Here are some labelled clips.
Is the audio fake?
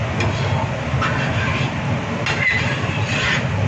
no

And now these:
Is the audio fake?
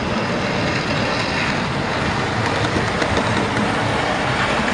no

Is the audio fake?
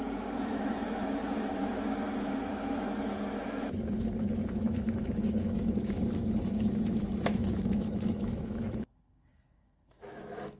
yes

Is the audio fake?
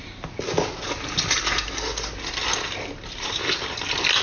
no